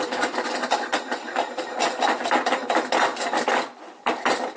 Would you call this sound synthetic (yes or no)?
no